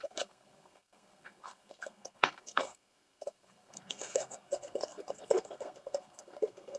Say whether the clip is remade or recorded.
remade